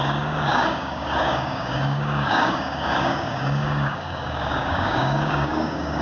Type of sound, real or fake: fake